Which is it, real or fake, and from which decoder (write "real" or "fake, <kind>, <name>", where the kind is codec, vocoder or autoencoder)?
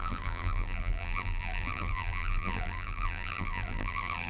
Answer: fake, vocoder, BigVGAN v2